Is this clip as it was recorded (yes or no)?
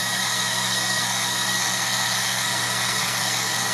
no